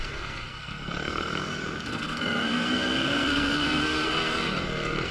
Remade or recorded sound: remade